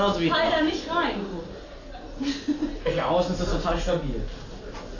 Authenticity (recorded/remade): recorded